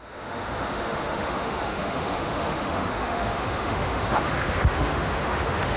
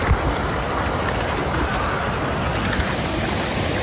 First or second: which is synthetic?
first